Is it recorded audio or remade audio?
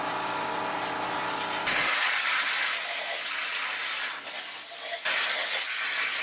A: recorded